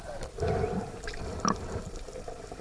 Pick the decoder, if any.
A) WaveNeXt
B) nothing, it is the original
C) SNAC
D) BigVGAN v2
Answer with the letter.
B